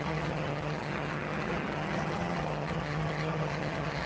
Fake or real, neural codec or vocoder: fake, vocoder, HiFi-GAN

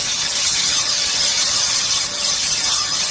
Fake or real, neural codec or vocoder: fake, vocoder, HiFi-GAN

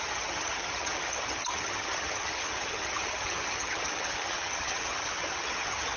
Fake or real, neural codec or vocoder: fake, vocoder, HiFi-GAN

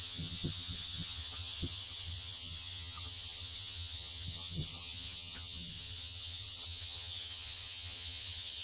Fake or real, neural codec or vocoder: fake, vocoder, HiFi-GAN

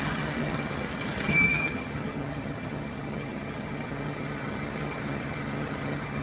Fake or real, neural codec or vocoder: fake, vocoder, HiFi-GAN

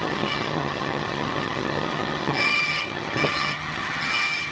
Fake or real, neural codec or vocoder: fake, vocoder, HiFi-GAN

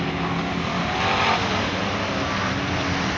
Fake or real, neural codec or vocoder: real